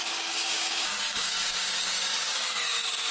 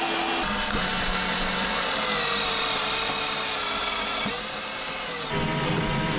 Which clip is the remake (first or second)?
first